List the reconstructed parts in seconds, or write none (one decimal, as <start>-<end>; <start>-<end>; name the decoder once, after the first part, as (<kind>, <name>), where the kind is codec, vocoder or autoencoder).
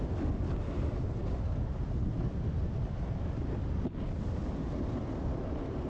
none